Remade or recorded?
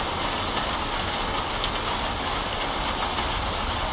recorded